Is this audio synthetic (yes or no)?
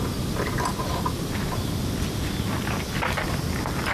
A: no